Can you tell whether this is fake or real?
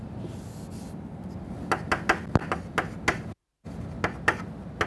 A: real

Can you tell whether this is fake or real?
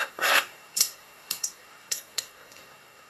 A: fake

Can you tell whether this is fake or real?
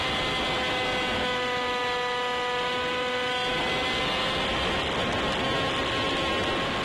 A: real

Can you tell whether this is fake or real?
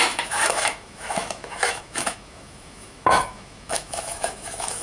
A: fake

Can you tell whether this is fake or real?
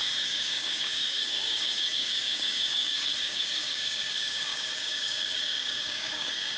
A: fake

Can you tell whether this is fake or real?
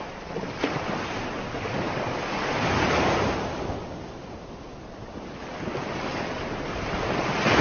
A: real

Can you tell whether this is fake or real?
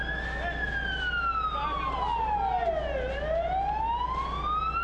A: real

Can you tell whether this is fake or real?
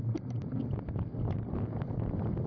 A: real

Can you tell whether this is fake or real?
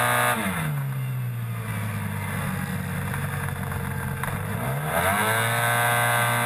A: real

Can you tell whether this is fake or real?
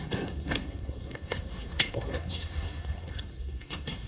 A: fake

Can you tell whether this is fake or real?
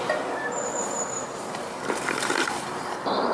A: fake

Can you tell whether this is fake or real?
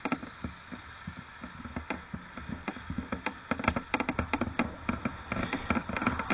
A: real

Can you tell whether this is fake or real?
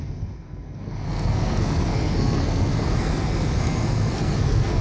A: fake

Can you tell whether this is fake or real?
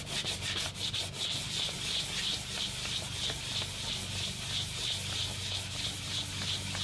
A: real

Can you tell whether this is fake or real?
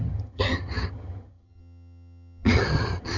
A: fake